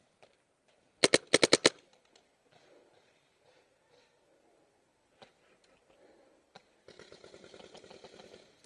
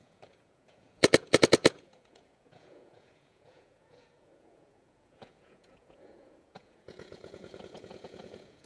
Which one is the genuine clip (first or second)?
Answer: first